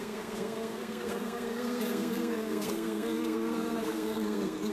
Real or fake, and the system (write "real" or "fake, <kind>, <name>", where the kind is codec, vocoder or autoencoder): fake, codec, SNAC